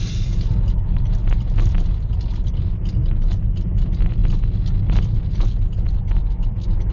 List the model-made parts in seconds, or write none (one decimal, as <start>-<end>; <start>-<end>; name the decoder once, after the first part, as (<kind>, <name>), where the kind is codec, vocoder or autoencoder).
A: 0.0-4.2 (vocoder, BigVGAN v2); 5.2-6.9